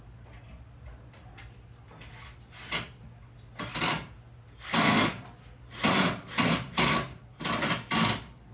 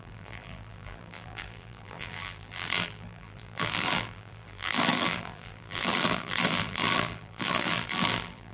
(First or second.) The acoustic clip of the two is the first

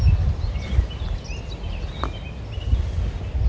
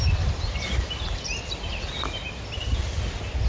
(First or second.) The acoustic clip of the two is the first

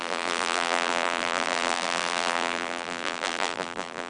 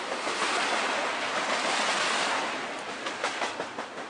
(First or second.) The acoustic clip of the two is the second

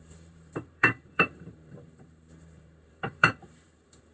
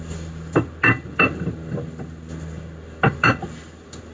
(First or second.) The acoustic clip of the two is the second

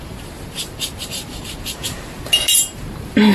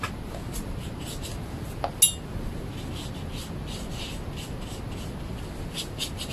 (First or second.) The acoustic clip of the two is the second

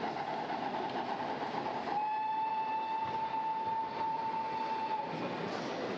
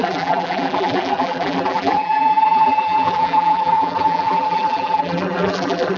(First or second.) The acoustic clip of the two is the first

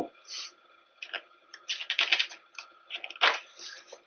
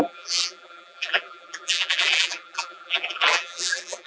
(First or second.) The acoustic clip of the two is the first